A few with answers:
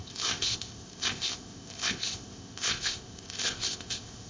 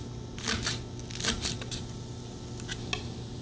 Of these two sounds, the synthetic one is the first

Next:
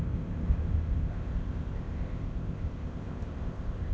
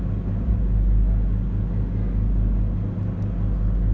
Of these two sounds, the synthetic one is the first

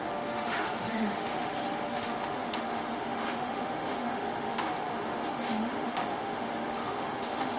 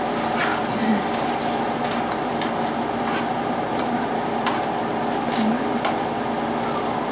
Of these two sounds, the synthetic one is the first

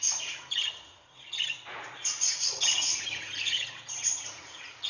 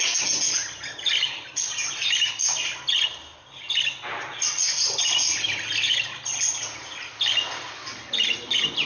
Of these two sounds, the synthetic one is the first